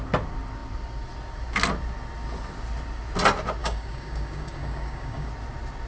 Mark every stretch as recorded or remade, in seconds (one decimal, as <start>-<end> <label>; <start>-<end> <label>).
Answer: 0.0-3.6 recorded; 3.6-5.3 remade; 5.3-5.9 recorded